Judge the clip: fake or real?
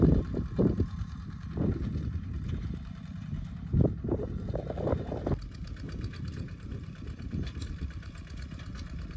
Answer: fake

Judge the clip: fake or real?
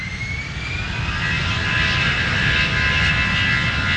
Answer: real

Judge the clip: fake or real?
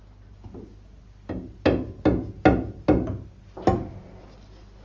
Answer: real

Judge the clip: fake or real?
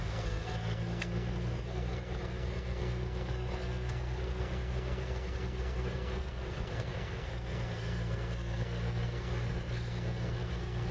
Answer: fake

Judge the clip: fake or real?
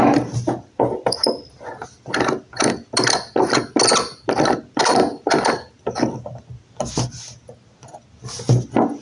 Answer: real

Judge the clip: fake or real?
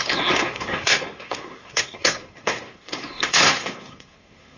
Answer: fake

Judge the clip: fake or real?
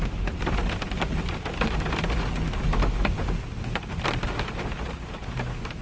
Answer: real